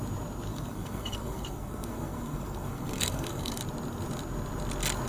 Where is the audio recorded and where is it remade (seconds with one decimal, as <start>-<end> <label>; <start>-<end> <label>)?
0.0-0.5 recorded; 0.5-3.6 remade; 3.6-5.1 recorded